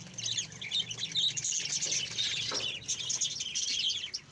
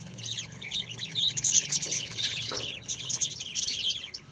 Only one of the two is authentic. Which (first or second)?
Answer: first